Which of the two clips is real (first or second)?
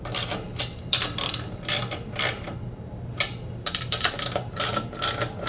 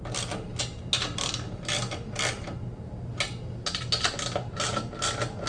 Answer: second